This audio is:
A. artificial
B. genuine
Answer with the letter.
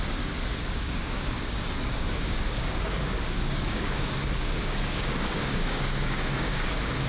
A